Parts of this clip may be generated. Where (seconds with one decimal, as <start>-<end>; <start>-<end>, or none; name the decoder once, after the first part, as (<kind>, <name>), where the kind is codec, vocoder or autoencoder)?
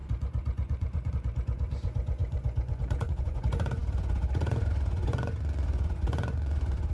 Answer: 0.0-6.9 (vocoder, Vocos)